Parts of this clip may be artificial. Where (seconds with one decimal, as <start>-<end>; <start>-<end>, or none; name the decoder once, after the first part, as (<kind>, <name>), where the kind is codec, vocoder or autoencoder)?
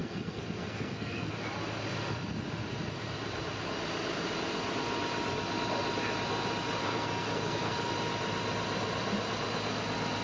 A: 0.0-1.3 (codec, SNAC); 6.8-7.9